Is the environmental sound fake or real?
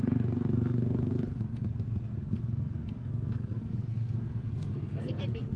fake